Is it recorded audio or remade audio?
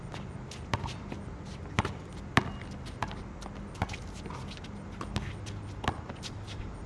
recorded